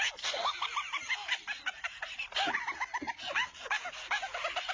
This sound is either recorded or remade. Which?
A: recorded